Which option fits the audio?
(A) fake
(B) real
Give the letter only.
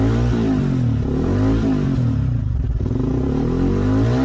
B